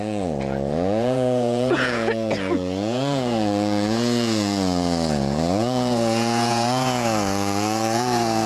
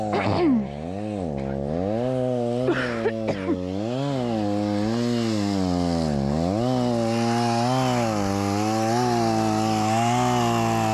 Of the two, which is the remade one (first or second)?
first